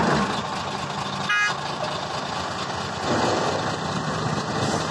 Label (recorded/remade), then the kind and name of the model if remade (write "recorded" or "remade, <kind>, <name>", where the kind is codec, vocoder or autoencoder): recorded